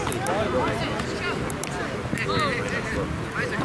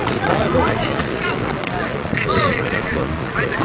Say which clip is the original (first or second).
first